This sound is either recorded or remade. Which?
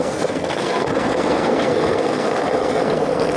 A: remade